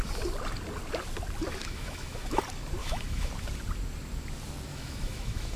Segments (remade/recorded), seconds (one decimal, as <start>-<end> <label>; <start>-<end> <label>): 0.0-1.6 recorded; 1.6-2.4 remade; 2.4-2.8 recorded; 2.8-3.3 remade; 3.3-4.7 recorded; 4.7-5.6 remade